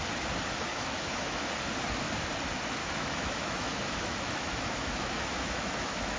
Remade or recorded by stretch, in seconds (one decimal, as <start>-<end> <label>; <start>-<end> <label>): 0.0-0.7 recorded; 0.7-1.5 remade; 1.5-2.8 recorded; 2.8-6.2 remade